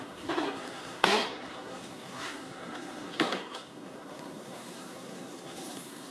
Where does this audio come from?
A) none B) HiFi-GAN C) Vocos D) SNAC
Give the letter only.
D